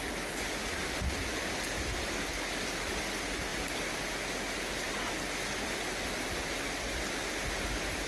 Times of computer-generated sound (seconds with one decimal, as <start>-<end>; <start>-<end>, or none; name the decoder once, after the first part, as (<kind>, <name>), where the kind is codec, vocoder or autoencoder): none